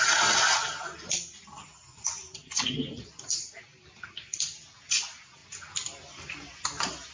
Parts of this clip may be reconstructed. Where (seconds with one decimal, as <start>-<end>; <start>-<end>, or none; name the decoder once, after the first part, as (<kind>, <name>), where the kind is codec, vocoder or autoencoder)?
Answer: none